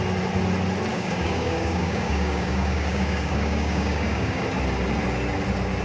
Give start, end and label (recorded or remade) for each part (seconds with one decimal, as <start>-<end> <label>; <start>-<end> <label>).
0.0-0.9 recorded; 0.9-4.4 remade; 4.4-5.8 recorded